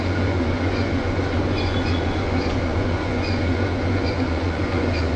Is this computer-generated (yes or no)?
yes